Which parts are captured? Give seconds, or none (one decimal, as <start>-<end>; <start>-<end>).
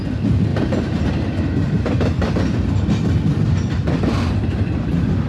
0.0-0.5; 1.0-1.6; 2.3-5.3